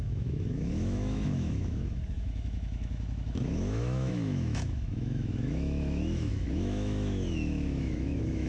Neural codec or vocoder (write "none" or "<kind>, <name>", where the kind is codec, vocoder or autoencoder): autoencoder, DAC-VAE